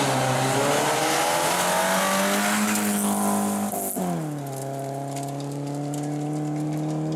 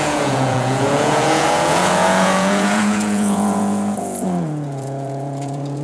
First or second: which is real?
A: first